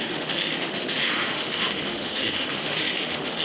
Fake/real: fake